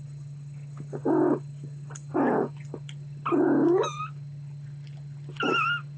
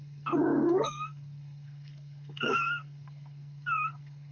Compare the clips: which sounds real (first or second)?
first